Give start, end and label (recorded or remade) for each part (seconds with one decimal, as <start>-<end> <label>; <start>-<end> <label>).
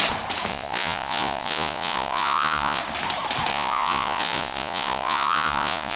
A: 0.0-0.5 recorded; 0.5-2.8 remade; 2.8-3.5 recorded; 3.5-6.0 remade